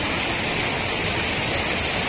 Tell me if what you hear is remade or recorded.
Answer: recorded